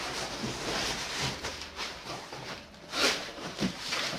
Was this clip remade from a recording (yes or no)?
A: yes